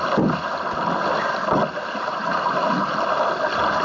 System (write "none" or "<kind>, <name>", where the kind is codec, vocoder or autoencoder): none